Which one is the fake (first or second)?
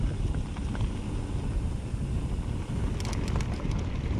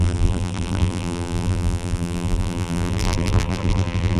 second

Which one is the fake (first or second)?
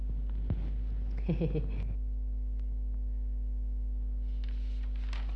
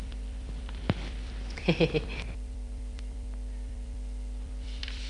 second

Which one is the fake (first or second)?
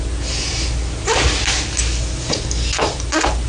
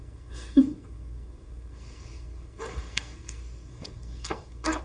second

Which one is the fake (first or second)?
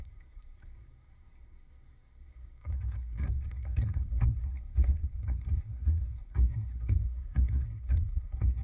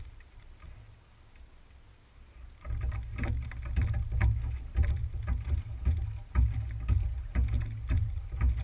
first